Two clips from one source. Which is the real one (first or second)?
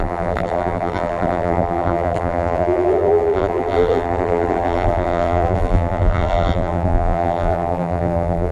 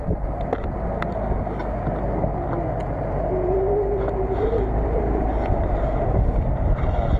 second